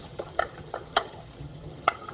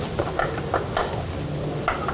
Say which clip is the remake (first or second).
first